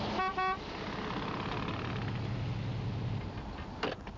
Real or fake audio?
real